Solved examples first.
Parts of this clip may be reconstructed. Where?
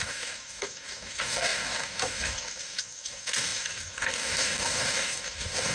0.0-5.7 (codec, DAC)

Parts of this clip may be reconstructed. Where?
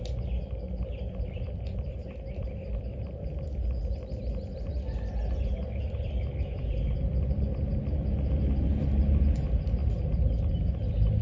none